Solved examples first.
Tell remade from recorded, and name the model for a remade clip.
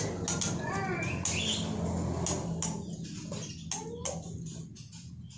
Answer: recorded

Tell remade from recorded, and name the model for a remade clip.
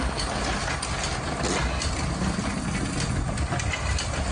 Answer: recorded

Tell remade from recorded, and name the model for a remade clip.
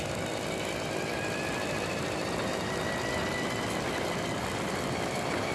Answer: recorded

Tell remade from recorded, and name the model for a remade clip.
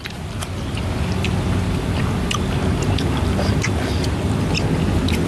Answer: recorded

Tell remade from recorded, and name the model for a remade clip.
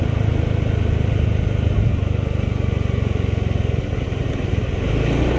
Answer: recorded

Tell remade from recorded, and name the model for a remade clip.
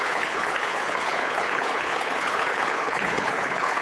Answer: remade, codec, HILCodec